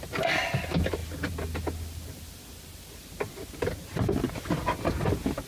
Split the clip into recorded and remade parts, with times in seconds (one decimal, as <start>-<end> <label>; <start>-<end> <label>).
0.0-5.5 recorded